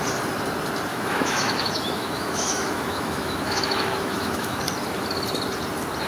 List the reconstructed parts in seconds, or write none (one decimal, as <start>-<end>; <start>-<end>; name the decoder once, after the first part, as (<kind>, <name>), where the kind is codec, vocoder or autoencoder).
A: 0.9-4.6 (autoencoder, DAC-VAE)